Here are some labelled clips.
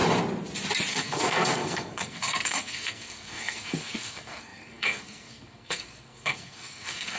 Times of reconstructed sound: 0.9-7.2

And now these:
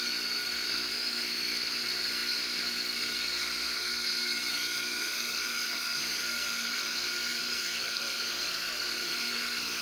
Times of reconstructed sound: 0.0-9.8

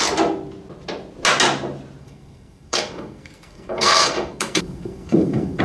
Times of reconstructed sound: 2.0-5.6

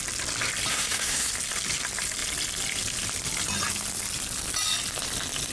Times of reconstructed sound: 0.7-1.3

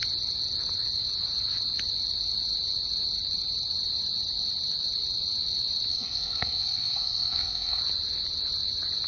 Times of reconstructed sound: 5.9-7.8

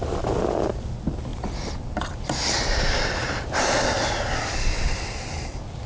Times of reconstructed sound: none

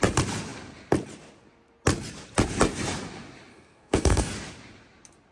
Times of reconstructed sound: 3.5-4.3